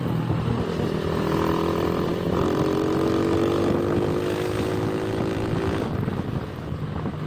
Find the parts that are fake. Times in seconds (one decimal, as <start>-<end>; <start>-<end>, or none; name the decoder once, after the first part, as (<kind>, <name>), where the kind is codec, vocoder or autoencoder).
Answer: none